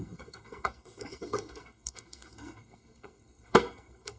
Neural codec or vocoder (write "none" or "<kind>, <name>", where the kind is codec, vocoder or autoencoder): codec, SNAC